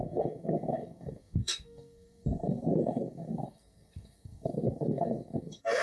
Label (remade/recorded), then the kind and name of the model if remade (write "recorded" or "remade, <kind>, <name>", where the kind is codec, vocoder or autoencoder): remade, codec, SNAC